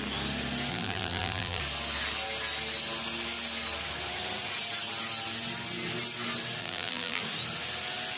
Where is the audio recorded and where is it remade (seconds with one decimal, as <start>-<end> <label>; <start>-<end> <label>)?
0.0-0.7 recorded; 0.7-1.6 remade; 1.6-6.6 recorded; 6.6-7.2 remade; 7.2-8.2 recorded

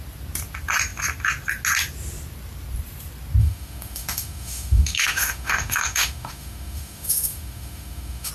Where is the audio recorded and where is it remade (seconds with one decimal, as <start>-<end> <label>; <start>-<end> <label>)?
0.0-3.4 recorded; 3.4-8.3 remade

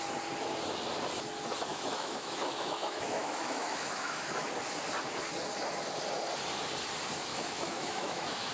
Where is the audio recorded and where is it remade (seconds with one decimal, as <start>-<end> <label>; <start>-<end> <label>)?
0.0-1.7 recorded; 1.7-4.5 remade; 4.5-7.3 recorded; 7.3-8.5 remade

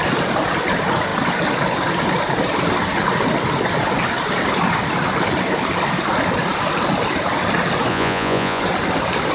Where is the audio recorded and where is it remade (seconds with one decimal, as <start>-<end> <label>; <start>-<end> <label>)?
0.0-7.9 recorded; 7.9-8.6 remade; 8.6-9.3 recorded

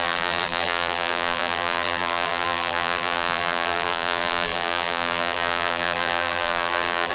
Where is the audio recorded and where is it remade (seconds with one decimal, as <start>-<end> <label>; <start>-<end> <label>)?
0.0-7.1 remade

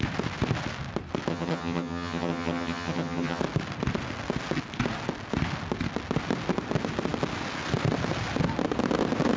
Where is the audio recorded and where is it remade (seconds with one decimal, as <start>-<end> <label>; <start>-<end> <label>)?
0.0-1.3 recorded; 1.3-3.4 remade; 3.4-9.4 recorded

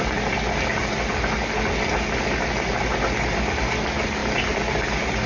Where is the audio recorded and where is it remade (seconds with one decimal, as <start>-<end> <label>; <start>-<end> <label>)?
0.0-5.3 recorded

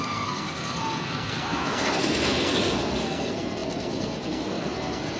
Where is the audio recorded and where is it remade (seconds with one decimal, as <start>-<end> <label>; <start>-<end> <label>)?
0.0-5.2 remade